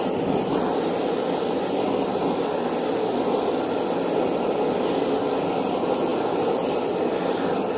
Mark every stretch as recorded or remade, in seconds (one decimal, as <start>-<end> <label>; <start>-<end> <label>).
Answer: 0.0-7.8 recorded